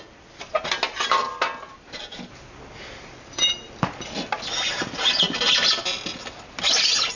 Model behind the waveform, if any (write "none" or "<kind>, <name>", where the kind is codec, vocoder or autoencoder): none